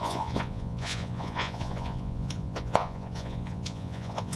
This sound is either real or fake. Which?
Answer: fake